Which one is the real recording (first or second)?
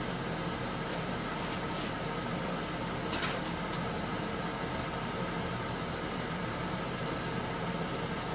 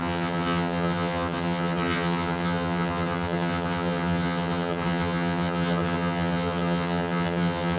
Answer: first